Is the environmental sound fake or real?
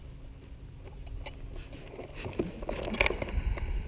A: real